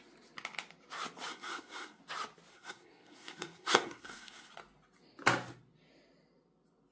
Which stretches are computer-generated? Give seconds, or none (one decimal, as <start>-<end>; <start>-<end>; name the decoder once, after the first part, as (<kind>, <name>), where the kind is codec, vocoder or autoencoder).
1.3-2.0 (codec, SNAC); 2.5-4.5